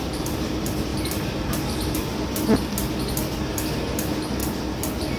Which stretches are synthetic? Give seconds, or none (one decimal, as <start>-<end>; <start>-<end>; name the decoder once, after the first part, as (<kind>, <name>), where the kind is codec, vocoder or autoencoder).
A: none